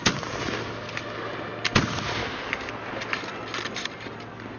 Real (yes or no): yes